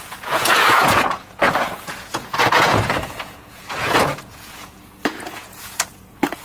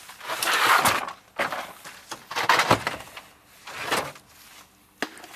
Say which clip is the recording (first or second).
second